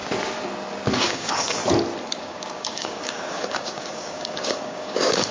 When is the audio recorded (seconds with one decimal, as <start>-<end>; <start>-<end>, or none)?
0.0-0.9; 1.6-2.2